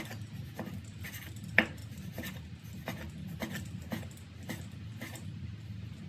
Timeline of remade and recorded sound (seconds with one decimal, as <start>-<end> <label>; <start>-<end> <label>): 0.0-6.1 recorded